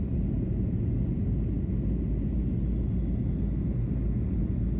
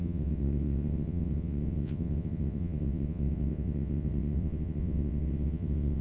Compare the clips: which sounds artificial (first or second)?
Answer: second